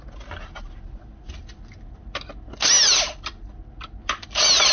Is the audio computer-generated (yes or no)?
no